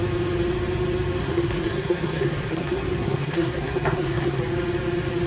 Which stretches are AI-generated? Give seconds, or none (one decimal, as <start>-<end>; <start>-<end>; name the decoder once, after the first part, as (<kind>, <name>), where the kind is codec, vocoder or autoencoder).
1.2-4.4 (codec, SNAC)